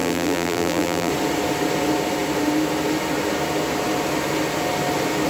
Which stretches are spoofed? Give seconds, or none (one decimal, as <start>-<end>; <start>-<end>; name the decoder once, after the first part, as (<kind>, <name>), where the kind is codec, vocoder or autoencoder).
0.0-1.1 (vocoder, BigVGAN v2)